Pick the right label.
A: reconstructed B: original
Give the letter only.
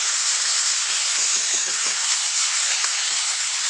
A